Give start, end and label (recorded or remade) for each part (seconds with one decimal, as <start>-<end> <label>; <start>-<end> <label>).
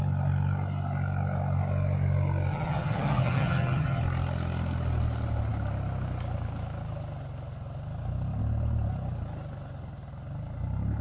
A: 0.0-2.5 recorded; 2.5-4.0 remade; 4.0-11.0 recorded